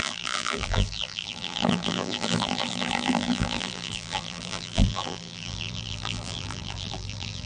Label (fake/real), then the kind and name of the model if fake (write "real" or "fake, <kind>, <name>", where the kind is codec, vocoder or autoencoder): fake, vocoder, BigVGAN v2